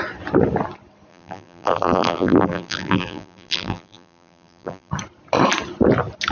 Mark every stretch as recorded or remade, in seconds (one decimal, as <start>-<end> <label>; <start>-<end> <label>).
0.0-1.1 recorded; 1.1-4.9 remade; 4.9-6.3 recorded